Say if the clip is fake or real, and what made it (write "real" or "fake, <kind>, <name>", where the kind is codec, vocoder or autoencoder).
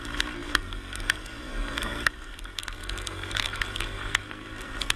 fake, codec, SNAC